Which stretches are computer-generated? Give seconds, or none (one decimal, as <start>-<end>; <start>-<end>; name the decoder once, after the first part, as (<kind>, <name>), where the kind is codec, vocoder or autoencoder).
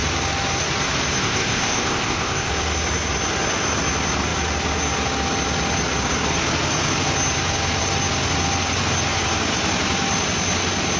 1.2-2.5 (codec, ZipCodec)